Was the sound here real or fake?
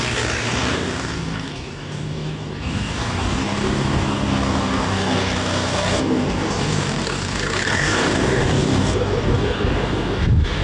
fake